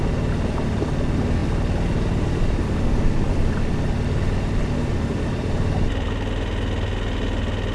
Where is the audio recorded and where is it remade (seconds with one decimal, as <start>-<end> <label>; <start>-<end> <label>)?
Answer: 0.0-7.7 recorded